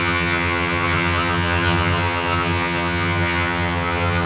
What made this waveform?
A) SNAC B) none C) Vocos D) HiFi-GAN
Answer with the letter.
D